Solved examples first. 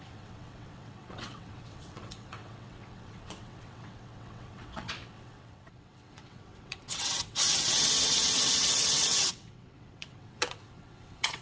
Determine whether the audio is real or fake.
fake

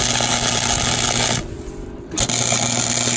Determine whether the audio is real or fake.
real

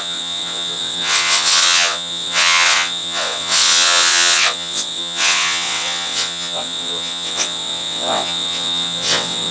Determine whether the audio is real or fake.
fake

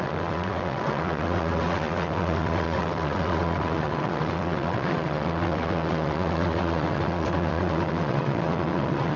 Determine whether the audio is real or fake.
fake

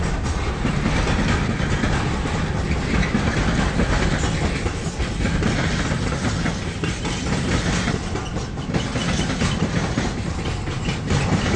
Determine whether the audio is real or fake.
real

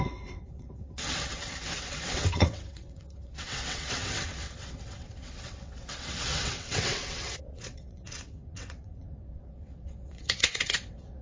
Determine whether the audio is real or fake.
fake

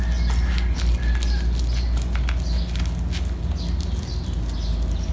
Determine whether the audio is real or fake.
real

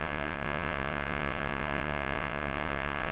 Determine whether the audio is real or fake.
fake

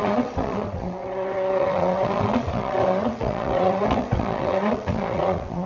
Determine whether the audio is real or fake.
fake